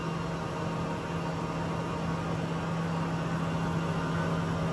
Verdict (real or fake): real